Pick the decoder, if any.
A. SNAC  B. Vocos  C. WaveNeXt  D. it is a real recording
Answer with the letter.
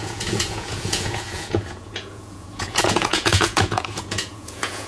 B